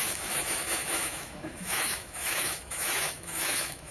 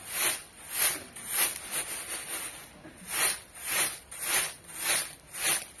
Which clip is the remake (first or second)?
first